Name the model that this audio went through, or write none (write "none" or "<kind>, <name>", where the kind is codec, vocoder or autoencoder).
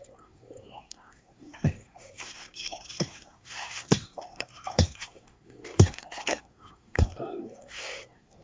codec, SNAC